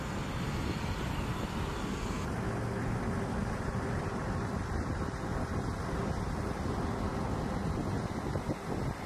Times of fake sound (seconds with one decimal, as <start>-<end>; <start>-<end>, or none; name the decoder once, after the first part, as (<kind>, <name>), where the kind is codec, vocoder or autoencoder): 3.4-4.1 (vocoder, BigVGAN v2)